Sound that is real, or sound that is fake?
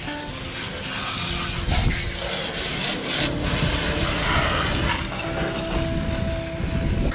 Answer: real